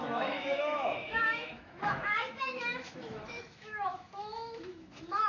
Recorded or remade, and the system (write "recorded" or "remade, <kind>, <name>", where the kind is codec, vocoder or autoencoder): remade, autoencoder, DAC-VAE